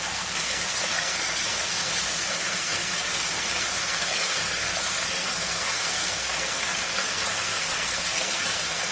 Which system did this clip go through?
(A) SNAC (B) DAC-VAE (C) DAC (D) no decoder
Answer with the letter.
A